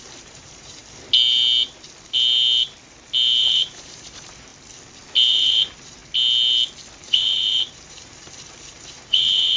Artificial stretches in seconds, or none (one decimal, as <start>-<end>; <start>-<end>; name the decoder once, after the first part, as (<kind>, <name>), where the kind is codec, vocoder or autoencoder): 0.0-0.8 (vocoder, BigVGAN v2); 3.4-4.5; 5.3-6.0; 6.9-9.6